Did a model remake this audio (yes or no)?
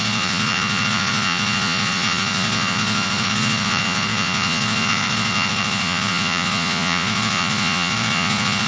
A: yes